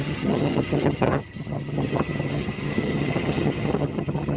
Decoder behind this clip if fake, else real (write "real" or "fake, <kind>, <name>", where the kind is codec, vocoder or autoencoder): fake, vocoder, HiFi-GAN